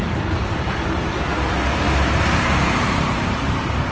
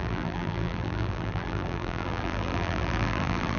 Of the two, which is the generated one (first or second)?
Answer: second